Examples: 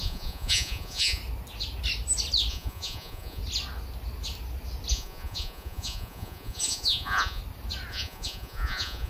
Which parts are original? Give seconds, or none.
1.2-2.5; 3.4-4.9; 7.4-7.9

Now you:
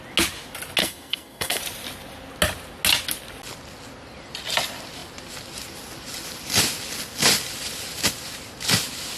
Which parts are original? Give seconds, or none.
0.0-0.8; 1.6-9.2

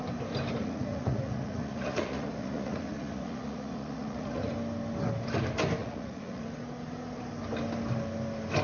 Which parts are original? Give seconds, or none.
0.0-0.6; 4.5-5.8; 6.4-8.6